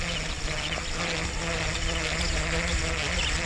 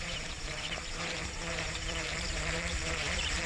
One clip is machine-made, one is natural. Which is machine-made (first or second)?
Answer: second